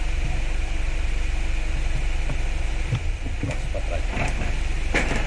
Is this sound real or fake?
fake